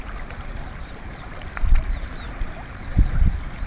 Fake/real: fake